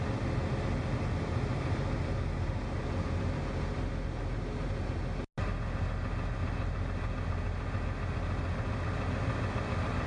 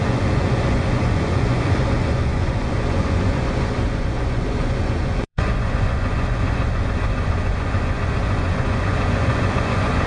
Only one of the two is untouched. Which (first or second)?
first